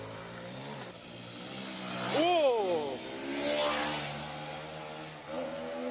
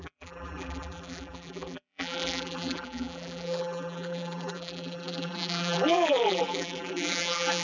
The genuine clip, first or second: first